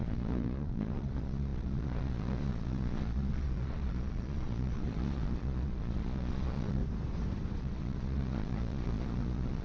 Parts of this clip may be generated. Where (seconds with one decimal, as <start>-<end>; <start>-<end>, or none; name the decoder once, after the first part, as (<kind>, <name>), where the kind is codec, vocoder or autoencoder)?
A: 0.0-6.8 (vocoder, Vocos); 7.6-9.6